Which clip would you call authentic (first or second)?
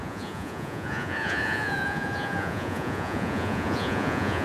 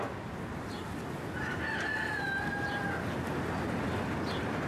second